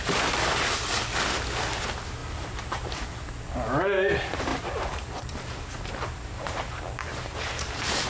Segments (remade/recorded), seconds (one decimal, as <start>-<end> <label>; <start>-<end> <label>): 0.0-4.5 recorded; 4.5-6.6 remade; 6.6-7.1 recorded; 7.1-8.1 remade